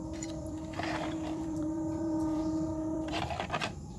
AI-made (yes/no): yes